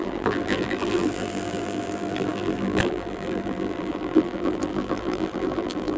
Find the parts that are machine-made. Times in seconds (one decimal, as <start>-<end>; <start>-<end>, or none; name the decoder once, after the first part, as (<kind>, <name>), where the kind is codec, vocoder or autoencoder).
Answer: 0.0-6.0 (vocoder, BigVGAN v2)